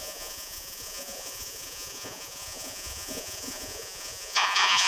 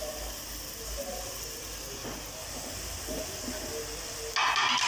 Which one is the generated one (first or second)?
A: first